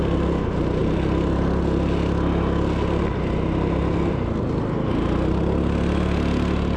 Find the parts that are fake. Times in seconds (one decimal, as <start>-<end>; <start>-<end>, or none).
none